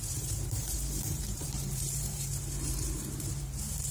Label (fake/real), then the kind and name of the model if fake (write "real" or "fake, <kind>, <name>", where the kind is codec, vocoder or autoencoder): fake, vocoder, BigVGAN v2